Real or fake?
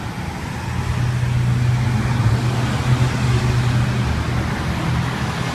real